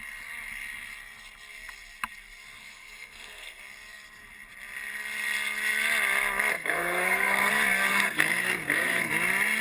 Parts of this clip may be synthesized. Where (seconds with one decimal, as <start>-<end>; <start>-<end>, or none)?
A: 2.6-3.6; 6.5-7.5; 7.9-9.1